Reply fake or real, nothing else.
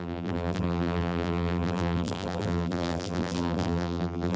fake